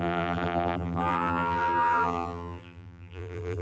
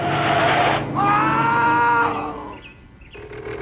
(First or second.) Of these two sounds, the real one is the second